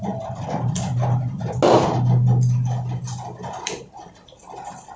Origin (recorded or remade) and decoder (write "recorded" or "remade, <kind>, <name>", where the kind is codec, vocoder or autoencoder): recorded